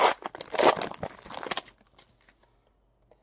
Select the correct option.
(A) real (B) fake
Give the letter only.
A